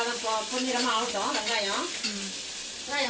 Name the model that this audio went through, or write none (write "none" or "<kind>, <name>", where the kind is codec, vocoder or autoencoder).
none